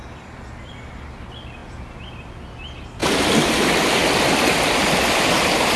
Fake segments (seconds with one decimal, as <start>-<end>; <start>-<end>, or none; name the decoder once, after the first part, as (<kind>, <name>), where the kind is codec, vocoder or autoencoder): none